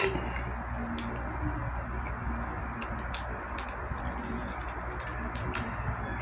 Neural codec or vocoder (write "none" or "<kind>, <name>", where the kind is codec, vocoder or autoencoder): none